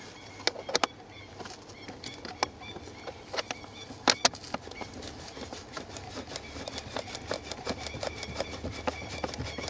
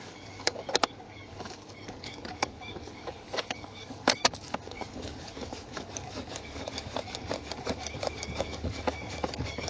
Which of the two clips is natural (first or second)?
first